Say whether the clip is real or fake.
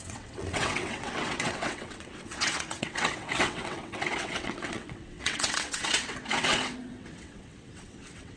fake